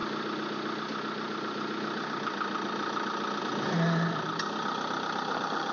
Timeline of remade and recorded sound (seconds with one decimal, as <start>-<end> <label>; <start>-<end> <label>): 0.0-5.7 recorded